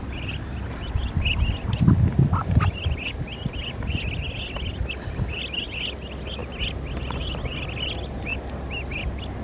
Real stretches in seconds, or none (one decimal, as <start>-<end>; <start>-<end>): 0.0-9.4